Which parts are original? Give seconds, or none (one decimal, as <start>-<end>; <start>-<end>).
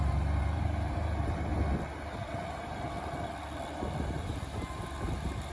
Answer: 1.5-4.0